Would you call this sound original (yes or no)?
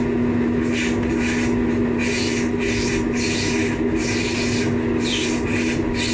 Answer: yes